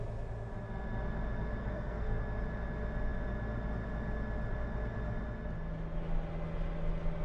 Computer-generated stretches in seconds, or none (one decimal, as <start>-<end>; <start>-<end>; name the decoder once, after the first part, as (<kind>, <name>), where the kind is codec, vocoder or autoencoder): 1.6-2.2 (codec, SNAC)